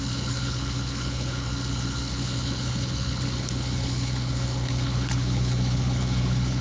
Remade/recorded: remade